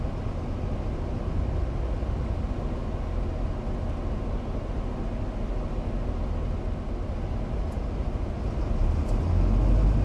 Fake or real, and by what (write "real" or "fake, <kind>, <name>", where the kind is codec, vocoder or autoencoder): real